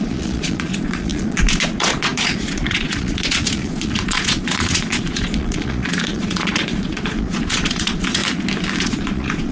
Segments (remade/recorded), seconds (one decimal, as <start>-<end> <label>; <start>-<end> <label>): 0.0-8.2 remade; 8.2-8.8 recorded; 8.8-9.5 remade